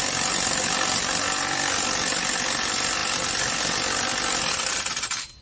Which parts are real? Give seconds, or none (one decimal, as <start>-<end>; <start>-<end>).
0.0-5.4